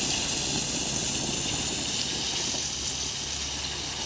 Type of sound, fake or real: real